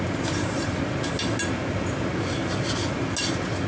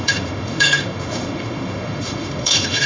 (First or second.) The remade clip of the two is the second